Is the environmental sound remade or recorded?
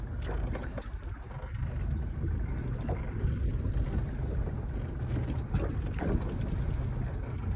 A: recorded